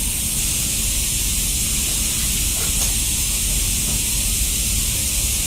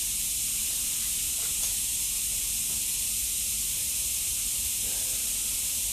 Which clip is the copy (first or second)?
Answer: second